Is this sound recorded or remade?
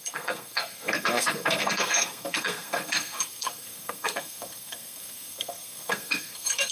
remade